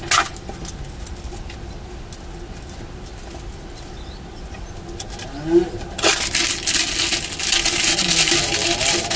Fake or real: real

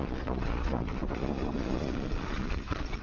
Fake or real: fake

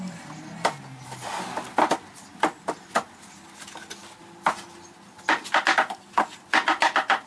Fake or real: real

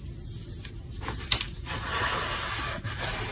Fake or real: real